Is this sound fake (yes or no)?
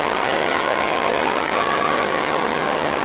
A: yes